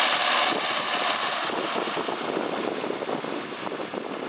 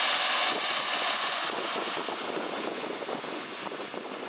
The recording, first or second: first